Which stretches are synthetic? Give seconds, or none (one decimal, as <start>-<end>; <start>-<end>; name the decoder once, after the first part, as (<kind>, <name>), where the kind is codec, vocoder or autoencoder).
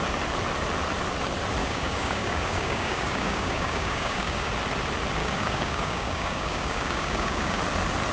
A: 1.6-4.5 (codec, DAC); 5.2-7.6